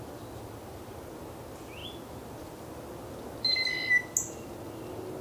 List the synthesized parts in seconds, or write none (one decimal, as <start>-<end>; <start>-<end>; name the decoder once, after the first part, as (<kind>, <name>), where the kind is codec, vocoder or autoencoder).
none